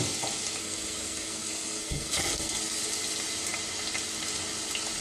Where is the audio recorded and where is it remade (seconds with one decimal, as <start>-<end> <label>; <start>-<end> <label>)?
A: 0.0-0.6 recorded; 0.6-2.8 remade; 2.8-5.0 recorded

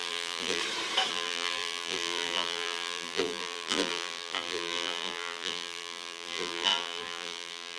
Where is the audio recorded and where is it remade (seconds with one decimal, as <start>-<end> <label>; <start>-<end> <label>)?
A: 0.0-0.6 remade; 0.6-1.1 recorded; 1.1-7.8 remade